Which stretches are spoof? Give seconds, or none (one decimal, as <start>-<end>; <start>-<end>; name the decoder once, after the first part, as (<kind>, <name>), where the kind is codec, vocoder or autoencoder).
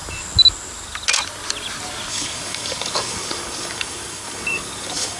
2.1-5.2 (codec, DAC)